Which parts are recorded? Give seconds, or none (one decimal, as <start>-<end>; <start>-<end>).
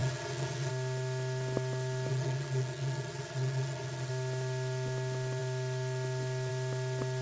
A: 0.7-2.1; 4.1-7.2